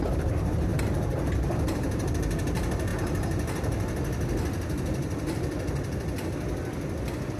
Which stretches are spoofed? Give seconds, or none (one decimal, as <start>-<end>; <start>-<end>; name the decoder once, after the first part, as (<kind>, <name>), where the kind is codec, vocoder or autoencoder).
0.7-2.1 (vocoder, BigVGAN v2)